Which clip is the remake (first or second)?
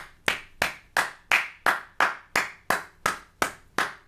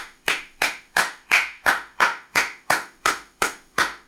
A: second